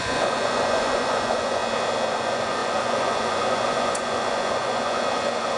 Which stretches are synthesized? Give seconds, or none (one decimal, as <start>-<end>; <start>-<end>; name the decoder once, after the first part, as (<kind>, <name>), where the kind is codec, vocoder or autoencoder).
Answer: 0.0-1.6 (vocoder, Vocos); 2.1-5.6